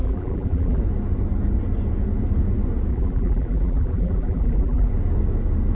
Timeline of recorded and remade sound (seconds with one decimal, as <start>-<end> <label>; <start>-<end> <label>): 0.0-0.8 remade; 0.8-2.9 recorded; 2.9-4.9 remade; 4.9-5.7 recorded